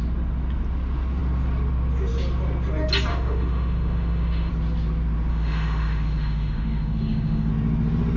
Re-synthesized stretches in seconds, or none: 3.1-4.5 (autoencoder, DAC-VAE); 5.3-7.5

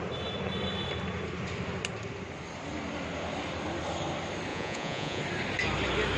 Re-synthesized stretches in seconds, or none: 4.5-5.2 (vocoder, Vocos)

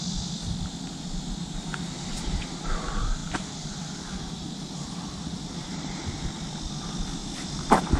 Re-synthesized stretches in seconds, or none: 3.2-6.7 (vocoder, BigVGAN v2); 7.2-8.0

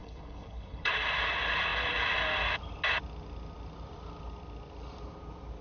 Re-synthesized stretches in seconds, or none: 0.0-0.9 (codec, HILCodec)

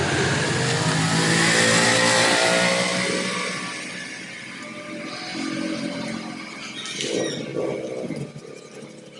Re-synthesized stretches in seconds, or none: none

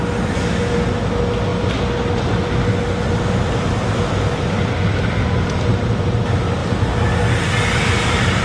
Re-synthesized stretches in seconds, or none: none

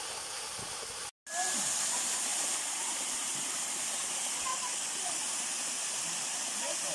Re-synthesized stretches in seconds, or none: none

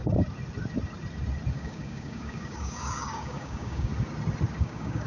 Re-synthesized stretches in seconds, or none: 1.5-3.9 (codec, DAC); 4.6-5.1